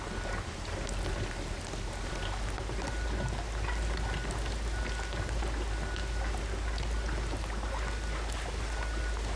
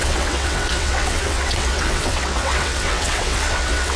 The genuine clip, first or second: first